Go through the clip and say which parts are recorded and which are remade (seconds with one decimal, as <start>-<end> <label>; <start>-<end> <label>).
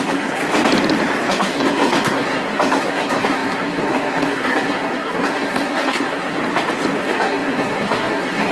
0.0-0.4 remade; 0.4-1.3 recorded; 1.3-6.4 remade; 6.4-7.0 recorded; 7.0-8.5 remade